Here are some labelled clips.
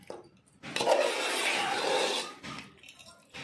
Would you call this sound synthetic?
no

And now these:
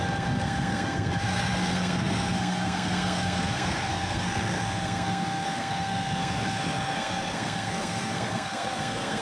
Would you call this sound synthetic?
yes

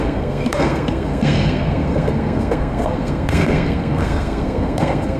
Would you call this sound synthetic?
yes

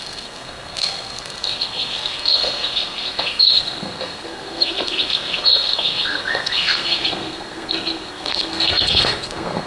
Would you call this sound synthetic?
yes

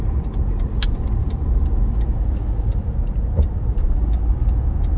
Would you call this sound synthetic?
no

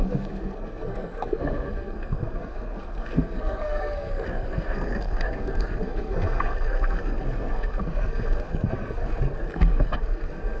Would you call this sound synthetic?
yes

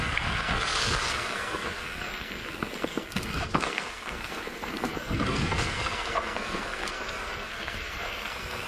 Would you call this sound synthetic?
yes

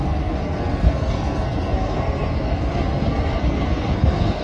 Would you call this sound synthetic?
yes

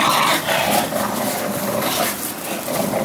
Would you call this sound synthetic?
no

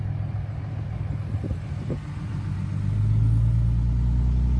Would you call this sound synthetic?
no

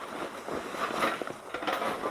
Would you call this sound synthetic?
no